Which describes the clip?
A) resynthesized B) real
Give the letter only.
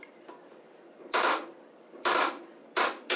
B